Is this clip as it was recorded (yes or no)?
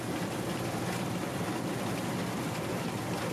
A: yes